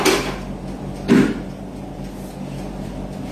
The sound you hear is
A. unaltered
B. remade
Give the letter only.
A